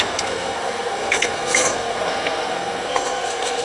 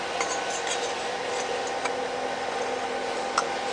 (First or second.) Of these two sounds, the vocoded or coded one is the first